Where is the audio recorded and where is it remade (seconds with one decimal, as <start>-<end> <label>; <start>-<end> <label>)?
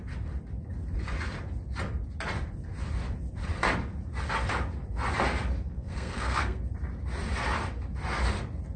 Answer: 0.0-5.7 recorded; 5.7-6.6 remade; 6.6-8.8 recorded